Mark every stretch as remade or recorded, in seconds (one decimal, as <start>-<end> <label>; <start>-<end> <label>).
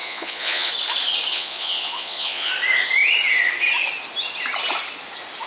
0.0-0.7 remade; 0.7-1.3 recorded; 1.3-2.5 remade; 2.5-5.5 recorded